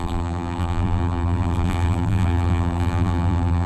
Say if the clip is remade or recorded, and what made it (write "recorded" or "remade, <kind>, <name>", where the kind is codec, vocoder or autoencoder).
remade, vocoder, BigVGAN v2